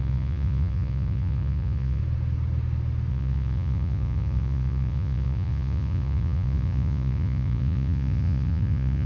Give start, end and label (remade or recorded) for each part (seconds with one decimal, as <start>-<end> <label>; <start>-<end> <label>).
0.0-2.0 remade; 2.0-3.1 recorded; 3.1-9.1 remade

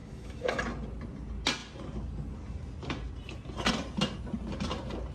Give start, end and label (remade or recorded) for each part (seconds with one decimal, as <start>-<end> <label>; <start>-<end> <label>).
0.0-0.6 remade; 0.6-5.1 recorded